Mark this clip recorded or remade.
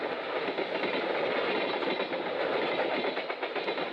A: recorded